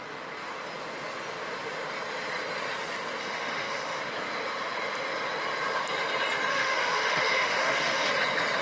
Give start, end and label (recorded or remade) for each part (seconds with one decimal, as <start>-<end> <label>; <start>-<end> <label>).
0.0-3.2 recorded; 3.2-4.0 remade; 4.0-6.5 recorded; 6.5-8.1 remade; 8.1-8.6 recorded